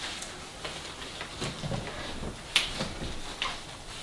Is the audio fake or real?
real